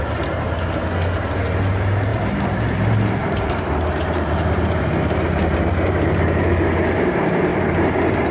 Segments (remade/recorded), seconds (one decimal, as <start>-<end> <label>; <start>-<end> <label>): 0.0-2.1 recorded; 2.1-7.1 remade; 7.1-7.5 recorded; 7.5-8.3 remade